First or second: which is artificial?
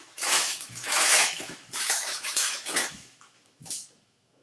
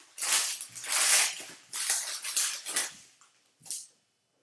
first